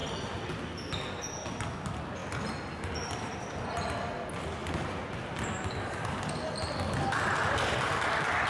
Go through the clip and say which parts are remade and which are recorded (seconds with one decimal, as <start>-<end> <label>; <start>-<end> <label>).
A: 0.0-8.5 recorded